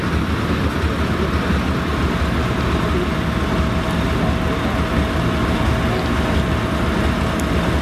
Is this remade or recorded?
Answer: recorded